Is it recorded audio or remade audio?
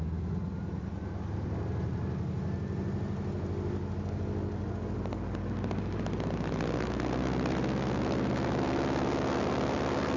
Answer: recorded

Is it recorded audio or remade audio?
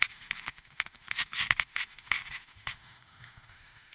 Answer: remade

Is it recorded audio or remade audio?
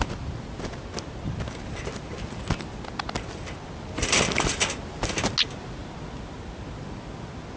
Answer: recorded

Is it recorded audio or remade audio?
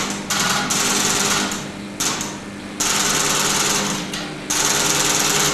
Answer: recorded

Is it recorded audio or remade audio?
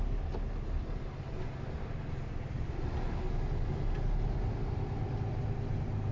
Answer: recorded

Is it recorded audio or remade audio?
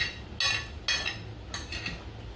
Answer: recorded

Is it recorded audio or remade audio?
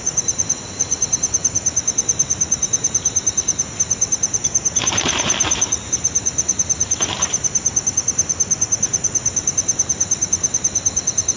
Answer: remade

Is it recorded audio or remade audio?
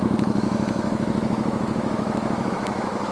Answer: remade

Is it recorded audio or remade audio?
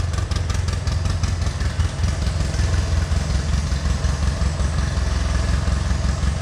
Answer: recorded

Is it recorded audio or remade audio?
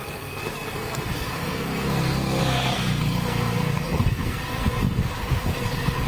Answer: remade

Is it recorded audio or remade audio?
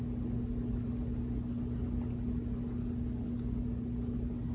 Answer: recorded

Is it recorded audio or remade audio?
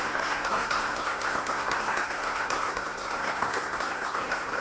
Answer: remade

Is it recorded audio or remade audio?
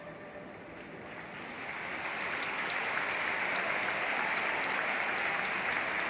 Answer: recorded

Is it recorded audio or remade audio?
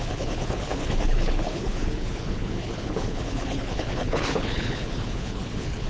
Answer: remade